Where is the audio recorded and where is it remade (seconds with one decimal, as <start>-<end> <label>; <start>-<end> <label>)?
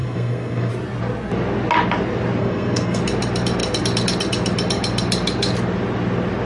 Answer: 0.0-0.7 remade; 0.7-2.4 recorded; 2.4-3.0 remade; 3.0-6.5 recorded